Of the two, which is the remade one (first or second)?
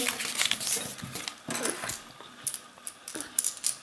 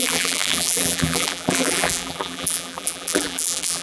second